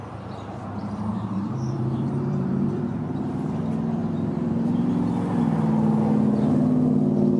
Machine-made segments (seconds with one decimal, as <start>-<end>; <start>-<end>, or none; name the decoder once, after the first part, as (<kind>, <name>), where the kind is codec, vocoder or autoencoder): 1.1-3.6 (vocoder, BigVGAN v2); 4.0-4.9